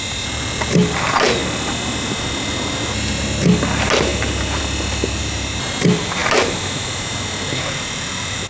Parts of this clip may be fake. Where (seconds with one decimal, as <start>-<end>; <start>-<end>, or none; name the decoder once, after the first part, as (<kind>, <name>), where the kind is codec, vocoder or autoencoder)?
none